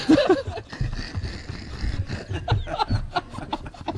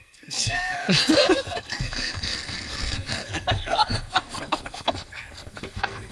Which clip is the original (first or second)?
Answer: first